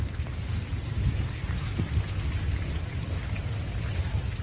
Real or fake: fake